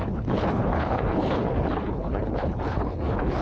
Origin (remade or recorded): remade